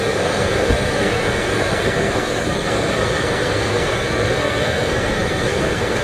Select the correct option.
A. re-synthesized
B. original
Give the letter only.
A